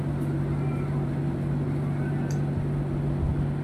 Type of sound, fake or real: real